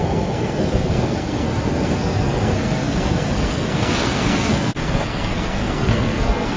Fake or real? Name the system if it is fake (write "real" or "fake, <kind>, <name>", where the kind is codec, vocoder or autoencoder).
fake, codec, SNAC